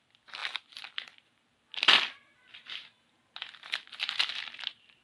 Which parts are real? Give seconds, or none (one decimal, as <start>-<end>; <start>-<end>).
0.0-0.4; 2.7-5.0